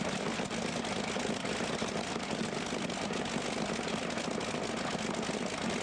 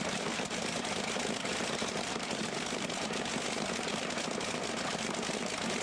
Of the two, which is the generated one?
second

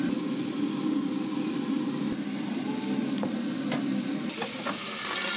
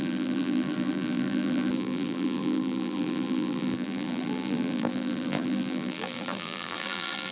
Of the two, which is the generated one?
second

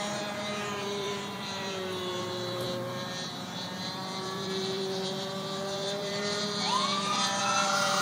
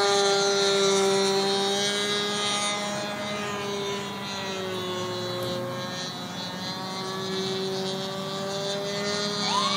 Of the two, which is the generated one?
first